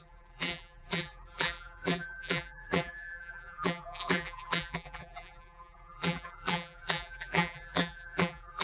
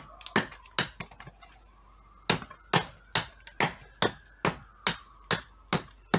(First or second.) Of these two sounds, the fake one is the first